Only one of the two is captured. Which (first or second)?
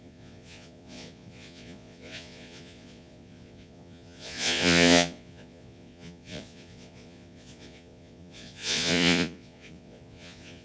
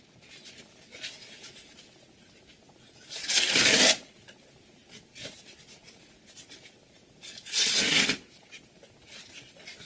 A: second